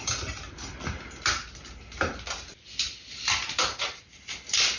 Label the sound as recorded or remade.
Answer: recorded